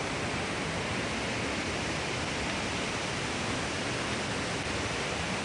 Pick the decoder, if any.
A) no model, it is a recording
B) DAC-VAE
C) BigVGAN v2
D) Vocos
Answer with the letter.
C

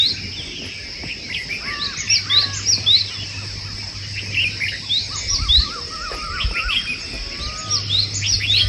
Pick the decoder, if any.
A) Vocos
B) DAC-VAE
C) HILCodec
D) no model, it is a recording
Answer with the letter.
D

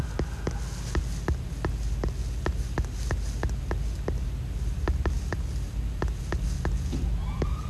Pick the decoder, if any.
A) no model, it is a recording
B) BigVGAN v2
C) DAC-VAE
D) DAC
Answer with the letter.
A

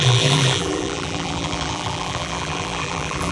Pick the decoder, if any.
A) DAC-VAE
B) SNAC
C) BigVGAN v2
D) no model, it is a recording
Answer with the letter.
C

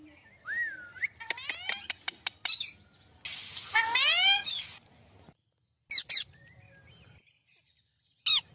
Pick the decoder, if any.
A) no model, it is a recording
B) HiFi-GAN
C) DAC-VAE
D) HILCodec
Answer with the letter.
A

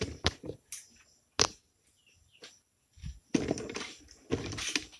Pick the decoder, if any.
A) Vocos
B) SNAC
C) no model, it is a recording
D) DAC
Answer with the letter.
C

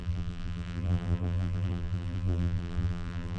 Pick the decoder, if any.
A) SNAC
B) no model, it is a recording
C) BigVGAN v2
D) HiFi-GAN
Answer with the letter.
C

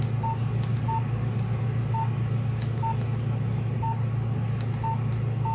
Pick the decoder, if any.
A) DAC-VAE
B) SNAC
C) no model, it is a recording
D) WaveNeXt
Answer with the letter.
C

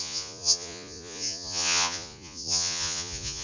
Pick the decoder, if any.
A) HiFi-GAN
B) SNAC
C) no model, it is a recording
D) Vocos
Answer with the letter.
D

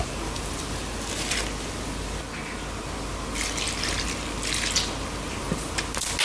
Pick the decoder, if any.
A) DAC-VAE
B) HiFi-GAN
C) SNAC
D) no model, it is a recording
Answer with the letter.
D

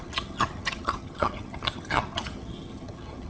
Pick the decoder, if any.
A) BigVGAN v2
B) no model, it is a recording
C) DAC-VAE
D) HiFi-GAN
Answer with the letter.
D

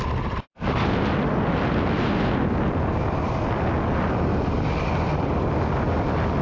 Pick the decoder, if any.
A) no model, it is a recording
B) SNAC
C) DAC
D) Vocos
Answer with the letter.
A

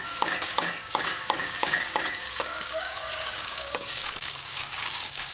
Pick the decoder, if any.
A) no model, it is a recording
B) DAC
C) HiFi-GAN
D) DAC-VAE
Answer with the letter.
B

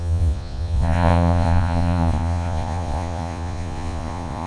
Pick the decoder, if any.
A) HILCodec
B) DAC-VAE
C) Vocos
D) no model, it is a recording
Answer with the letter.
C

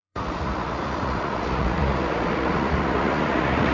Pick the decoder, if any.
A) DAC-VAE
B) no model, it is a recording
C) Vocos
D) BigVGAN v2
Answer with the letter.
C